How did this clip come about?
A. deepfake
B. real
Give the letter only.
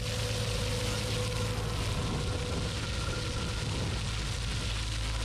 B